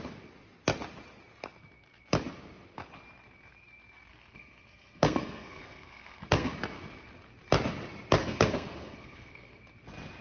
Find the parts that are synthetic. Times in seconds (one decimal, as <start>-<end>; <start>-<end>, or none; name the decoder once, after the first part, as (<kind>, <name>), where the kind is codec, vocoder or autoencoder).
4.1-6.5 (codec, SNAC); 8.2-9.6